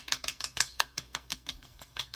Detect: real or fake fake